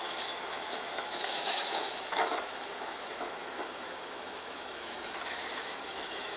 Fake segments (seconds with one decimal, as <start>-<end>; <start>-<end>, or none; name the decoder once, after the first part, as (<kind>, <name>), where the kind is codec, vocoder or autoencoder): 0.0-6.4 (autoencoder, DAC-VAE)

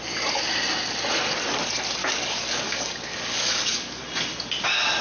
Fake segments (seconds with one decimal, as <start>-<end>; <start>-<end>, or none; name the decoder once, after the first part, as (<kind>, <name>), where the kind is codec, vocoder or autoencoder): 2.0-4.0 (codec, DAC)

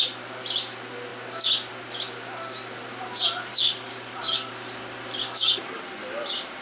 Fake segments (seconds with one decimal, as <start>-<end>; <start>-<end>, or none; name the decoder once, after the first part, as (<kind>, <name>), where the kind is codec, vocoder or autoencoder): 3.5-4.5 (codec, DAC); 5.2-5.8

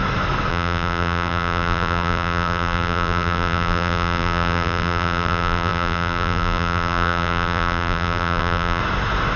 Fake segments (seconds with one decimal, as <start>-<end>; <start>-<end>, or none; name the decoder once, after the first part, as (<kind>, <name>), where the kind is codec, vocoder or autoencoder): 0.5-8.8 (vocoder, BigVGAN v2)

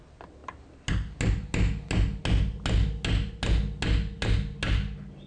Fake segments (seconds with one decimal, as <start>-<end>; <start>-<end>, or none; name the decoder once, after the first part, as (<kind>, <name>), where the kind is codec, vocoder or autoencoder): none

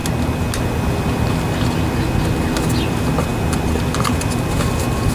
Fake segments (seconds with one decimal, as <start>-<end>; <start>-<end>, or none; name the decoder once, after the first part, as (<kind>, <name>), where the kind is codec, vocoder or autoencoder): none

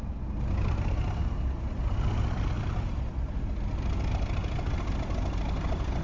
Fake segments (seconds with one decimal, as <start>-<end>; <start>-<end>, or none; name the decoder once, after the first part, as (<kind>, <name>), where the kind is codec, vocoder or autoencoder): none